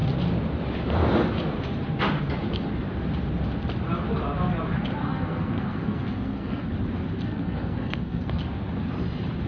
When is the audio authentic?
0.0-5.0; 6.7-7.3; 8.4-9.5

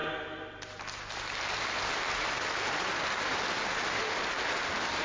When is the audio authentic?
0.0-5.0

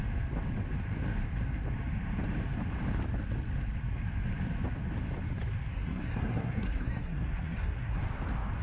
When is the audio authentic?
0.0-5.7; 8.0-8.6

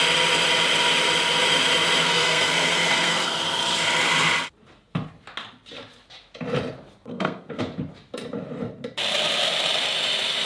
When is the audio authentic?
0.0-2.0; 3.4-7.1; 7.6-10.5

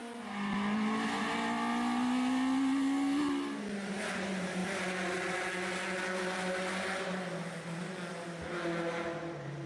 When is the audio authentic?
0.0-9.7

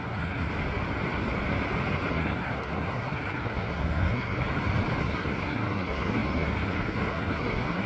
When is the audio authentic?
0.5-2.1; 4.4-5.0